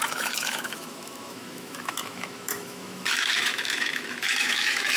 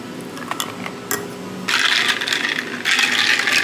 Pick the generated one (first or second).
first